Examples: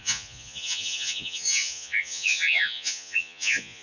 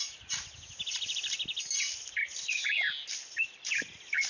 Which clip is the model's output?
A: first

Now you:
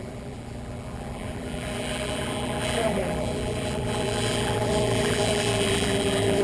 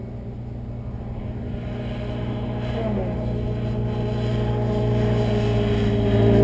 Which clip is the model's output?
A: first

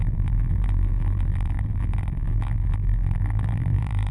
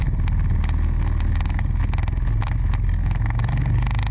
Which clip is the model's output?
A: first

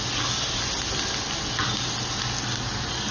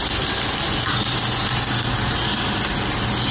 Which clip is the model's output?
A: second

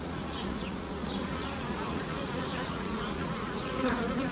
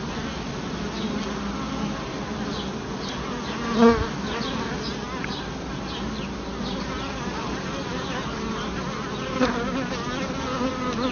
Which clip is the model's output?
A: first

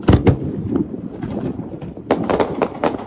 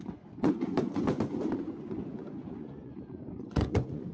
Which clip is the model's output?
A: second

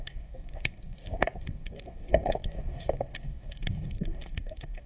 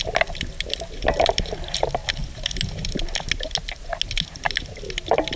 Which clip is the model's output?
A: first